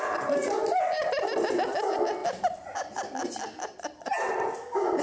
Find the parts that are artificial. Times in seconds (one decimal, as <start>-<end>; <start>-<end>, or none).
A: none